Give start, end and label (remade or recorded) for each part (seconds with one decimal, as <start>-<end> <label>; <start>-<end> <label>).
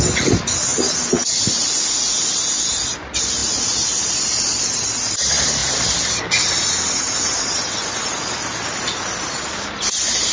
0.0-3.4 recorded; 3.4-4.6 remade; 4.6-5.6 recorded; 5.6-6.2 remade; 6.2-10.3 recorded